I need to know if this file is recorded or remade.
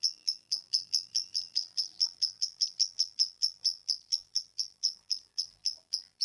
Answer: remade